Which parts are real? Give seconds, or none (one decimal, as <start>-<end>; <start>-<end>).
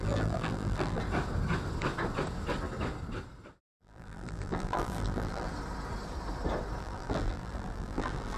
1.0-3.6; 5.5-6.8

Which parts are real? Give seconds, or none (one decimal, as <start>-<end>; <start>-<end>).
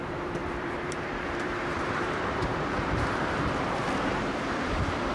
none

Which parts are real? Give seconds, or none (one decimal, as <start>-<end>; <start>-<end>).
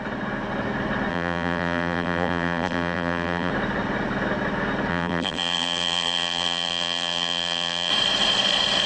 0.0-1.1; 3.5-4.9; 7.9-8.9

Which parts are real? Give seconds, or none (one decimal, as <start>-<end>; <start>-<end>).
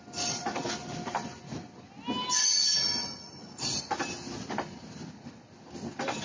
0.0-6.2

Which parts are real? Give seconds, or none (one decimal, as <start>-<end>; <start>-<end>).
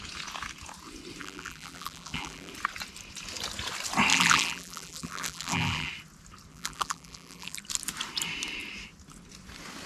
0.0-1.2; 2.5-4.1; 5.9-6.5; 7.6-9.9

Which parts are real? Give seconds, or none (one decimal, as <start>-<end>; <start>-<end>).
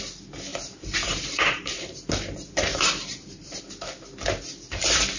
0.0-0.5; 3.6-5.2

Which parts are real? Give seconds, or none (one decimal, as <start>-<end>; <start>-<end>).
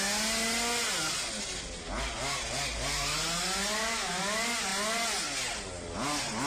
0.0-6.5